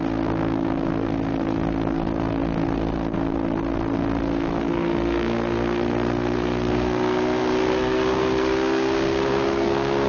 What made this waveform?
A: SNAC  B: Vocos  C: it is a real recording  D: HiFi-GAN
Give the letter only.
A